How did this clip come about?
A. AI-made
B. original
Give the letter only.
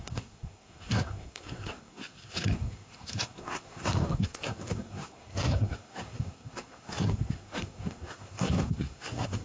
A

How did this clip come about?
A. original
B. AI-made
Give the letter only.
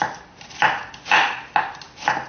A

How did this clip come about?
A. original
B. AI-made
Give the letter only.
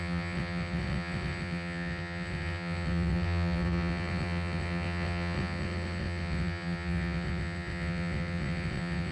B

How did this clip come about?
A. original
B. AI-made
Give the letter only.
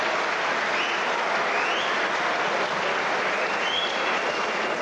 A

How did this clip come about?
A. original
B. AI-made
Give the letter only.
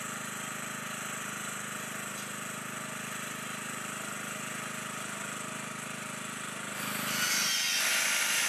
A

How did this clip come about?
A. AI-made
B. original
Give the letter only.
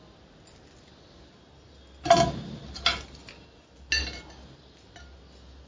B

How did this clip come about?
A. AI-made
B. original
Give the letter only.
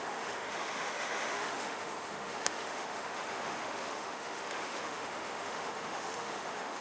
A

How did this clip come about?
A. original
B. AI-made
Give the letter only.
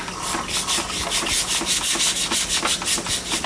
A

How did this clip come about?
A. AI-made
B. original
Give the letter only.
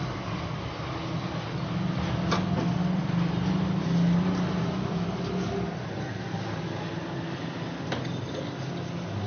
B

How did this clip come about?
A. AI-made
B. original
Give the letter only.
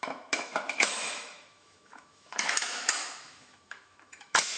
A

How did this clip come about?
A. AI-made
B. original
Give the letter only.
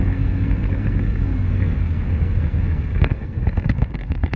A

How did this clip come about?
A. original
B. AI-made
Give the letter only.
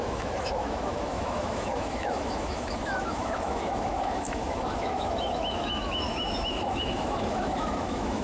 B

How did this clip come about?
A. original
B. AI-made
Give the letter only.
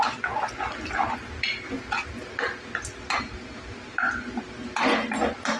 A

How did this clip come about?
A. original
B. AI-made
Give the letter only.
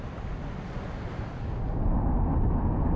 A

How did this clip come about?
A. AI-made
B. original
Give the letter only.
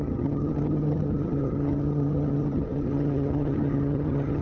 A